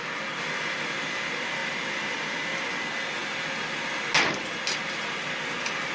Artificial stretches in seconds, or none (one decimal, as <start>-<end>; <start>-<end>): none